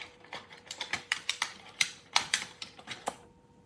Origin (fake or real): fake